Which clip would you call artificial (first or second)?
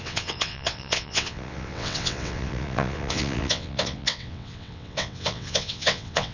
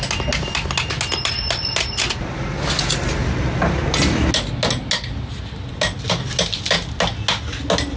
first